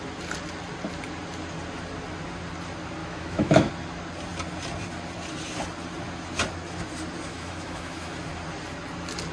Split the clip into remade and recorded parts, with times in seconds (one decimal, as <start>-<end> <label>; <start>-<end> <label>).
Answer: 0.0-3.0 recorded; 3.0-3.7 remade; 3.7-7.3 recorded; 7.3-8.1 remade; 8.1-9.3 recorded